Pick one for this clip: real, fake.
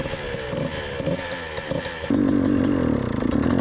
real